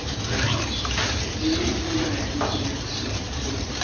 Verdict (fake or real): fake